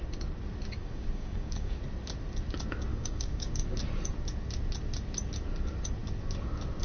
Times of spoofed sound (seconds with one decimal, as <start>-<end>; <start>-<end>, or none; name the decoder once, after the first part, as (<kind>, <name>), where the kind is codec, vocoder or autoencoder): 0.8-1.8 (codec, DAC); 2.9-3.5